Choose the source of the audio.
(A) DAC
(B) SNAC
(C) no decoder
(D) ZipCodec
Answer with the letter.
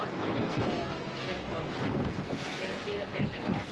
B